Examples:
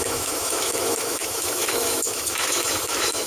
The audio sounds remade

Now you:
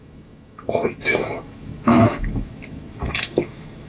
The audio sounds remade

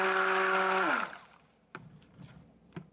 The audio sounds recorded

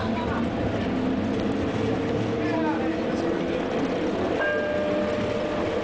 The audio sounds recorded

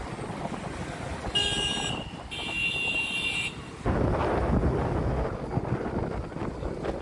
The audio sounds recorded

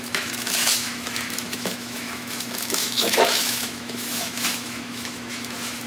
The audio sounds remade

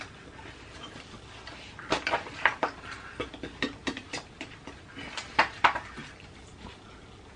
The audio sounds recorded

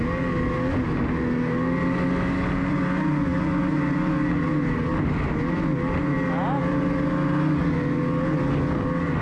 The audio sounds recorded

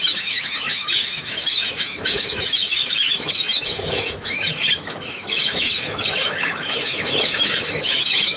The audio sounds remade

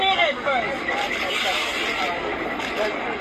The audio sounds recorded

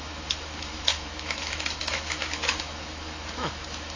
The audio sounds remade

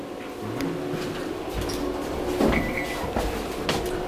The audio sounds recorded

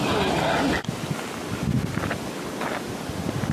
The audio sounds recorded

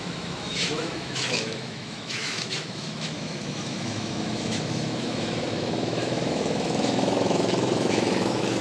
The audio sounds remade